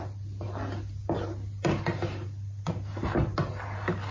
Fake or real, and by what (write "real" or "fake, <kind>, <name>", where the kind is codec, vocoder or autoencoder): real